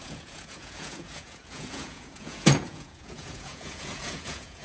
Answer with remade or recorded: remade